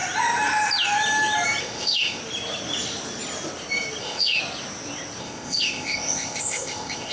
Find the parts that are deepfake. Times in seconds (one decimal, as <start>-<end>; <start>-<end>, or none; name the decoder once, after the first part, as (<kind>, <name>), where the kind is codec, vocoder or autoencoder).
1.6-2.2 (codec, ZipCodec); 4.0-4.4; 5.2-7.1